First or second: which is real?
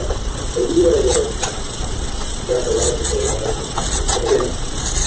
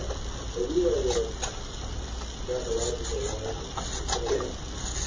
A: second